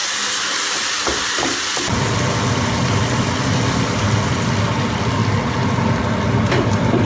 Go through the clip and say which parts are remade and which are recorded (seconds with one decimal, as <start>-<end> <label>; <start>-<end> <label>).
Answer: 0.0-7.0 recorded